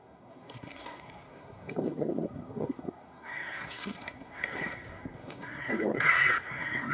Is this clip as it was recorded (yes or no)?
no